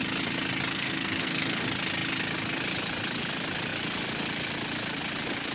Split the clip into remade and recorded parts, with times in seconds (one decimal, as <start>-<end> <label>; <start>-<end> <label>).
0.0-0.7 recorded; 0.7-1.6 remade; 1.6-5.5 recorded